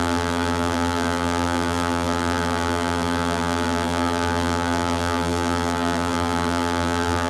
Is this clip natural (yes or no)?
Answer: no